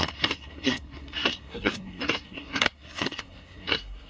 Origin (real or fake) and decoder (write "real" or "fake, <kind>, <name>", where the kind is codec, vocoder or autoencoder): fake, codec, SNAC